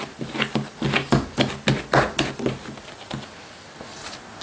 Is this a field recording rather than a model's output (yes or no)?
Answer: yes